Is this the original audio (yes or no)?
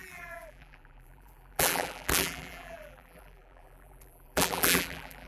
no